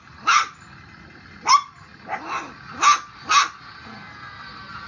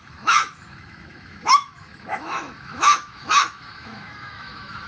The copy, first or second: second